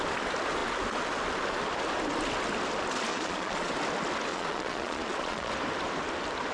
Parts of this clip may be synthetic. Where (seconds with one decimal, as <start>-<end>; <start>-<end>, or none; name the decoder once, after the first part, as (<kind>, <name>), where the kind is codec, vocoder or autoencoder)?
3.1-3.7 (vocoder, Vocos); 4.3-5.5

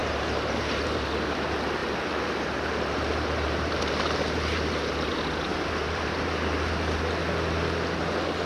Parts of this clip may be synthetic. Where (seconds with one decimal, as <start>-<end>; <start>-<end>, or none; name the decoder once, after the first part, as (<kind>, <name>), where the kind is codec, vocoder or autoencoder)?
0.0-1.1 (vocoder, BigVGAN v2); 1.8-5.1; 5.5-7.0

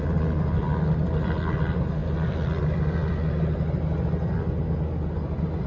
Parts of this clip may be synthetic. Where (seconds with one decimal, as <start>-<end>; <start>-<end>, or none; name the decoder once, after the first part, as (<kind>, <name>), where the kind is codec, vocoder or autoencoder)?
none

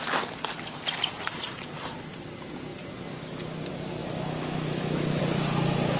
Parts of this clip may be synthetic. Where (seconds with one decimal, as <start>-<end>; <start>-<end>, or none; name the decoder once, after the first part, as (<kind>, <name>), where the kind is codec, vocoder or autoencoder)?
4.0-5.2 (autoencoder, DAC-VAE)

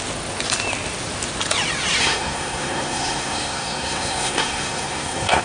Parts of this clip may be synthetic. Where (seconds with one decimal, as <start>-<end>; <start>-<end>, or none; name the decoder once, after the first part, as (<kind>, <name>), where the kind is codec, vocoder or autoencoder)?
2.0-5.4 (codec, SNAC)

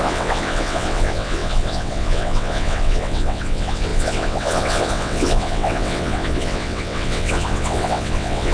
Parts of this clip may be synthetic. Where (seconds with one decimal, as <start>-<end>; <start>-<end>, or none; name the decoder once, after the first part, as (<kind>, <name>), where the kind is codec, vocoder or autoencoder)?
0.0-8.5 (vocoder, WaveNeXt)

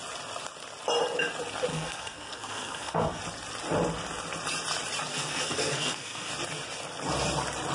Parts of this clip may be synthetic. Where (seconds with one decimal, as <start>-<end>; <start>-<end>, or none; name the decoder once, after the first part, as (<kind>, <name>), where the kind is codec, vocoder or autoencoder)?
1.7-3.2 (codec, SNAC); 5.1-6.3

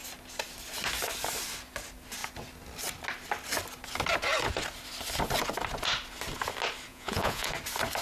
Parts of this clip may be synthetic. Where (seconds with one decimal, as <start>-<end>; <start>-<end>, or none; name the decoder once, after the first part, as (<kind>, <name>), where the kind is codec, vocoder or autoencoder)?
6.9-7.5 (vocoder, Vocos)